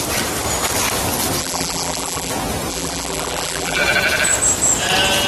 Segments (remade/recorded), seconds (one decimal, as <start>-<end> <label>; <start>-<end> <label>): 0.0-1.4 recorded; 1.4-2.3 remade; 2.3-2.7 recorded; 2.7-3.8 remade; 3.8-5.3 recorded